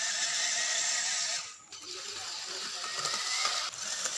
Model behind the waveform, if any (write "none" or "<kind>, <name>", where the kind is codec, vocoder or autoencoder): none